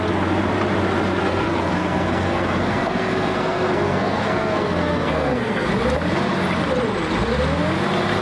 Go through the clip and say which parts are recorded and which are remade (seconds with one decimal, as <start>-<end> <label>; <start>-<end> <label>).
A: 0.0-1.2 recorded; 1.2-5.7 remade; 5.7-8.2 recorded